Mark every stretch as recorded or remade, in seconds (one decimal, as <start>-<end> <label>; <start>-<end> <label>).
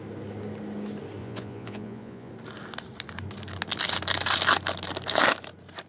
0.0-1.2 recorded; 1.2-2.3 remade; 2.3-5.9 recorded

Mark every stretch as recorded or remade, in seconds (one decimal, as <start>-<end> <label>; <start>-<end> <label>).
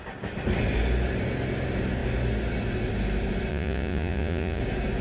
0.0-3.5 recorded; 3.5-4.6 remade; 4.6-5.0 recorded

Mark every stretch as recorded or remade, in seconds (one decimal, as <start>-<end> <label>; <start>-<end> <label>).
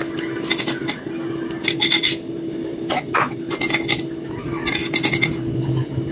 0.0-0.8 recorded; 0.8-3.2 remade; 3.2-6.1 recorded